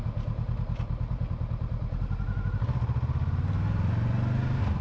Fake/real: real